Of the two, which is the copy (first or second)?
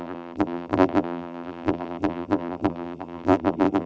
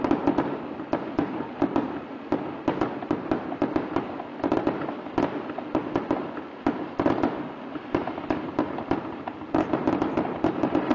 first